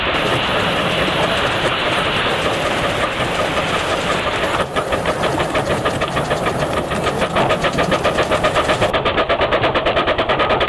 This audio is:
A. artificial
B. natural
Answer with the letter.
B